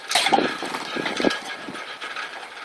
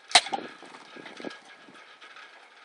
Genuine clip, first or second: second